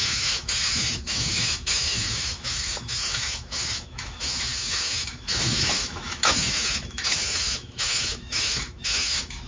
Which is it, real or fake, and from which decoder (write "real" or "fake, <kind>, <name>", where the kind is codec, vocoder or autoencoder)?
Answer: fake, autoencoder, DAC-VAE